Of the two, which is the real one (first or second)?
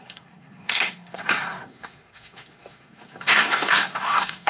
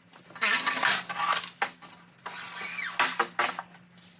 second